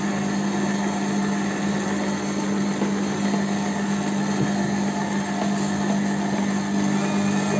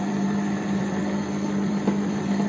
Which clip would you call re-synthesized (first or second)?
second